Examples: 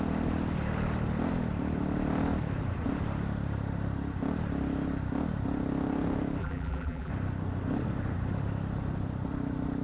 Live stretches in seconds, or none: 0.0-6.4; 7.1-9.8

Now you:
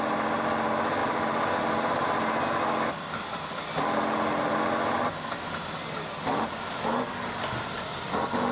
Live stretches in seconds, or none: 0.0-8.5

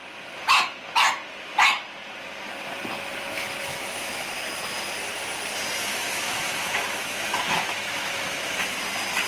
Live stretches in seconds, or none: 0.0-3.7; 4.3-5.9; 8.7-9.3

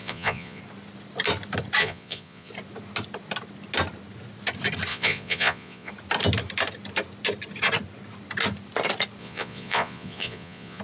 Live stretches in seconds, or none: 0.6-1.8; 2.5-4.9; 5.9-9.2

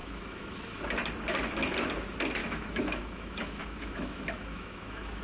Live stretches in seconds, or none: 0.8-2.4

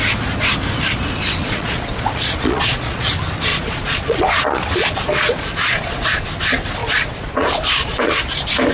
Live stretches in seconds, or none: 0.0-1.4; 3.1-3.5; 6.3-6.8; 8.2-8.7